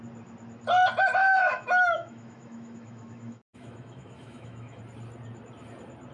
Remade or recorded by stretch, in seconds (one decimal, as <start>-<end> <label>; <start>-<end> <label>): 0.0-1.2 recorded; 1.2-4.8 remade; 4.8-6.1 recorded